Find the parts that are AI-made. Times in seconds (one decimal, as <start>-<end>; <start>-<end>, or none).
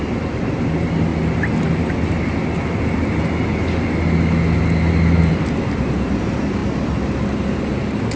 0.0-1.1; 5.2-6.6; 7.2-8.2